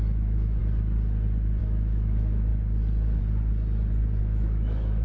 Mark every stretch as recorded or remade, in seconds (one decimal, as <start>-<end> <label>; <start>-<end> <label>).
0.0-0.6 remade; 0.6-1.6 recorded; 1.6-2.5 remade; 2.5-4.2 recorded; 4.2-5.0 remade